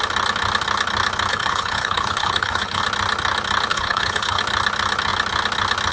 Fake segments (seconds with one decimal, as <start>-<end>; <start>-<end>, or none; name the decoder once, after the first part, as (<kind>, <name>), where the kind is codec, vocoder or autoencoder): 1.3-2.8 (codec, HILCodec); 3.7-4.4